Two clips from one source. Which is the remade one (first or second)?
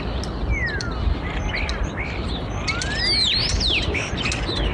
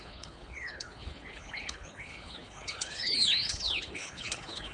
second